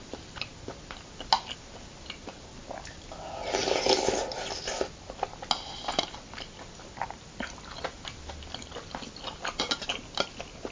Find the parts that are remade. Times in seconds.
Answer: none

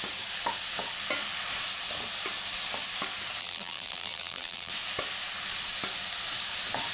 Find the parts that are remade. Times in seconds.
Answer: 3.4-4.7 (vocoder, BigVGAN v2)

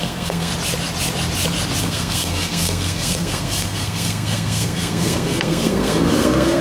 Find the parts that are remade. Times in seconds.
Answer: 0.0-0.5 (codec, SNAC); 1.8-6.6